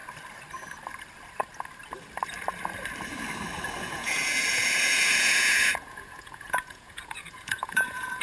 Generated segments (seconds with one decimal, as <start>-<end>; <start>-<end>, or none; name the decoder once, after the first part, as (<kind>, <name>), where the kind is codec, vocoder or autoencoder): 3.8-8.2 (vocoder, Vocos)